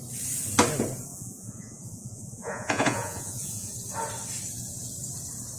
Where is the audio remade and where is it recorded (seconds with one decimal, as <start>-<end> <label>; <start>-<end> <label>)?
0.0-1.1 recorded; 1.1-3.7 remade; 3.7-5.6 recorded